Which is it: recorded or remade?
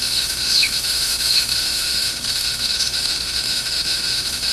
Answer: remade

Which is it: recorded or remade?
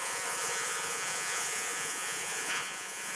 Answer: remade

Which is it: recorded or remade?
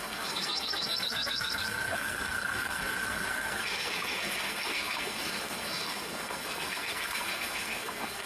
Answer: remade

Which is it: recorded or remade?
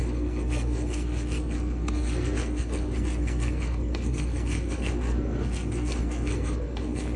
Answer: remade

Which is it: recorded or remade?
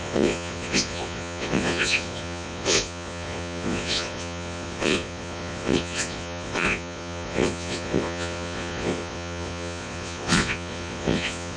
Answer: remade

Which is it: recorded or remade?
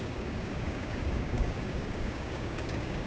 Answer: remade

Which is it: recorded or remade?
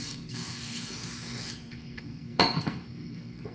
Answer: remade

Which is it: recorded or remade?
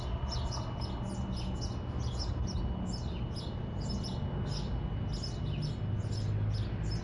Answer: recorded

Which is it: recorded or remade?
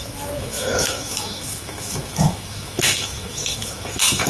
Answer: remade